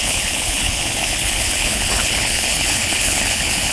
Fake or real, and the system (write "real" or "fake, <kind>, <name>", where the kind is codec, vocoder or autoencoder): fake, codec, HILCodec